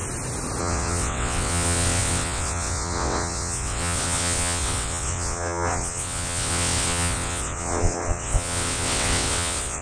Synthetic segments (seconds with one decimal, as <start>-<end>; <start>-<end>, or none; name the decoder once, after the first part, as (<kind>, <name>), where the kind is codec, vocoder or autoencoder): 0.6-9.8 (vocoder, WaveNeXt)